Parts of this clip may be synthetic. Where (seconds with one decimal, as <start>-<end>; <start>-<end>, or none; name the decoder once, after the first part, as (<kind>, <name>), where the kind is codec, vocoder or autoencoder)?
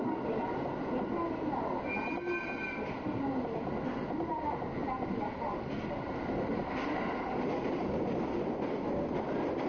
none